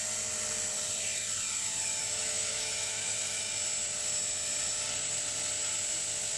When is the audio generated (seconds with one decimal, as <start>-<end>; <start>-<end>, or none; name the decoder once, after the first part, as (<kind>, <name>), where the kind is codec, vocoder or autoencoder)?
2.0-3.5 (autoencoder, DAC-VAE)